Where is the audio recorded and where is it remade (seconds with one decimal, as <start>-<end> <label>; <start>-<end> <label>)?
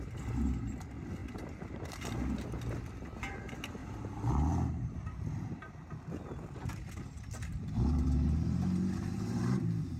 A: 0.0-1.2 recorded; 1.2-2.1 remade; 2.1-3.8 recorded; 3.8-6.7 remade; 6.7-7.5 recorded; 7.5-10.0 remade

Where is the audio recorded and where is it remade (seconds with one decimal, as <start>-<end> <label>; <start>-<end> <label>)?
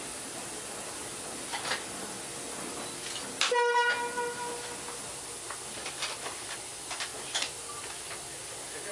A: 0.0-8.9 recorded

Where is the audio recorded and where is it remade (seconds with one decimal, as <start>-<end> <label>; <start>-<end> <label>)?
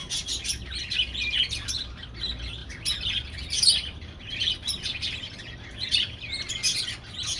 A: 0.0-2.6 recorded; 2.6-6.5 remade; 6.5-7.4 recorded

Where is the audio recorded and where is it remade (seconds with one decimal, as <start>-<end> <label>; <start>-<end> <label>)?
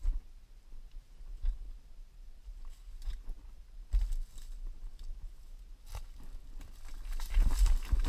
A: 0.0-8.1 recorded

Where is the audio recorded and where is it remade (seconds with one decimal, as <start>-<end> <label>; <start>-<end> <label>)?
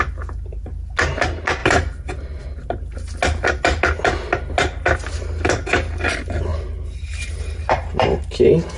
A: 0.0-1.6 recorded; 1.6-2.4 remade; 2.4-6.5 recorded; 6.5-8.2 remade; 8.2-8.8 recorded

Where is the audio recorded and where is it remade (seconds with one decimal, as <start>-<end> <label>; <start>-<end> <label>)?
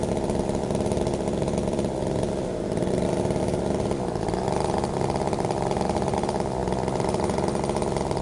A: 0.0-6.6 remade; 6.6-7.6 recorded; 7.6-8.2 remade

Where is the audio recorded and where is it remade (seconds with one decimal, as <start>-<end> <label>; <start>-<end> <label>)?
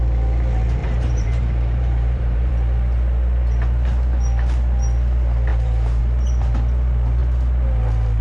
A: 0.0-0.8 recorded; 0.8-2.5 remade; 2.5-5.5 recorded; 5.5-6.0 remade; 6.0-8.2 recorded